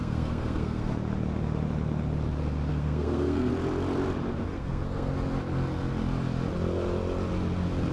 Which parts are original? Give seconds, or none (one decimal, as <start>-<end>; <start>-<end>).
0.9-2.7; 3.5-4.5; 5.1-7.9